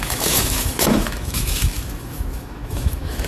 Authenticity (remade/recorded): remade